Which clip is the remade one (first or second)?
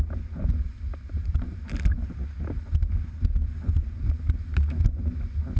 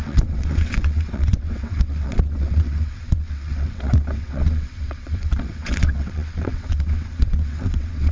second